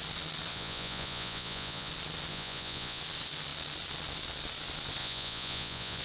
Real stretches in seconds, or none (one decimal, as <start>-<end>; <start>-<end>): 0.0-0.5; 1.9-2.3; 3.0-5.0